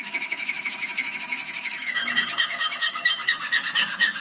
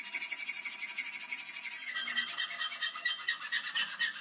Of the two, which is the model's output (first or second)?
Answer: first